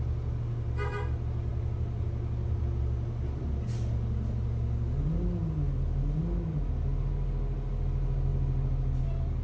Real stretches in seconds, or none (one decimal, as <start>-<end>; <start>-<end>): 0.0-9.4